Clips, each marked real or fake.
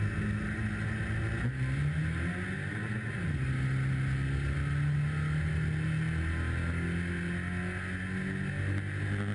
real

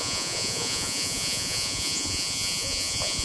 fake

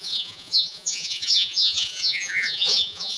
fake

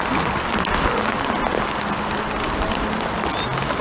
real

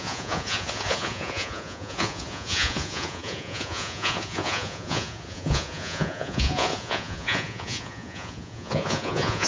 fake